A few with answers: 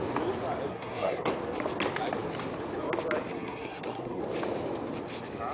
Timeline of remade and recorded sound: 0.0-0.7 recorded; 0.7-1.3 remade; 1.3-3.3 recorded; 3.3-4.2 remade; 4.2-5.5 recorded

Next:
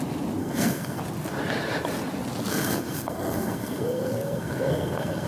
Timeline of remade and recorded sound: 0.0-0.4 recorded; 0.4-1.0 remade; 1.0-2.5 recorded; 2.5-5.3 remade

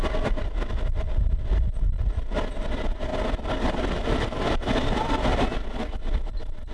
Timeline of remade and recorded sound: 0.0-3.1 recorded; 3.1-6.3 remade; 6.3-6.7 recorded

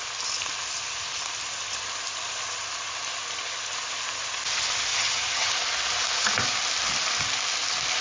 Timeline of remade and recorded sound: 0.0-4.9 recorded; 4.9-5.5 remade; 5.5-8.0 recorded

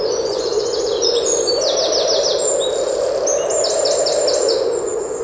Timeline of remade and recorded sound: 0.0-1.5 remade; 1.5-4.4 recorded; 4.4-5.2 remade

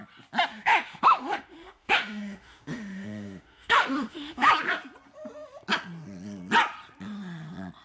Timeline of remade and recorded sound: 0.0-0.5 recorded; 0.5-4.5 remade; 4.5-7.8 recorded